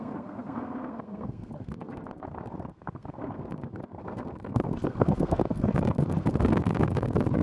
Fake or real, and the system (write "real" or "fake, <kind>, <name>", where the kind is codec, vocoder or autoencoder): fake, codec, SNAC